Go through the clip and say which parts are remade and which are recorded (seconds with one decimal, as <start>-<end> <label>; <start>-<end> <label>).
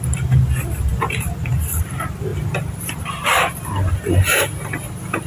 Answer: 0.0-5.3 recorded